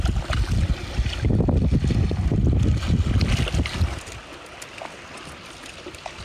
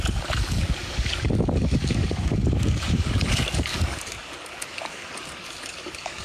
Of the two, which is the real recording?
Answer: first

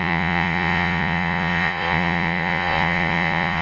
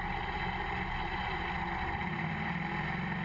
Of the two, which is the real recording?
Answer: second